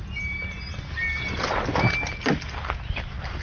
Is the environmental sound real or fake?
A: real